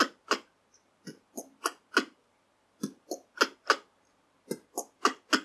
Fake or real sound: real